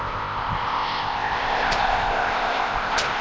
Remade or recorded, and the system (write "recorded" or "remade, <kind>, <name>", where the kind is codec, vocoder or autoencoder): remade, codec, ZipCodec